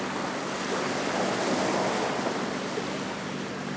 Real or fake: real